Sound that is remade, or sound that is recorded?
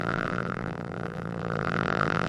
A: remade